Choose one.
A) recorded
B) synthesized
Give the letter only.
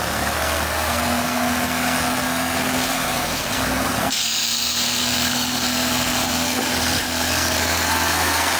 B